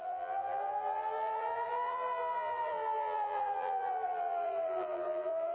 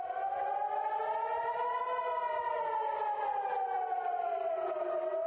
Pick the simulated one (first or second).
first